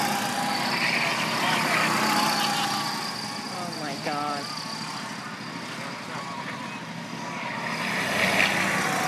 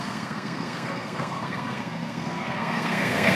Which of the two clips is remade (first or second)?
second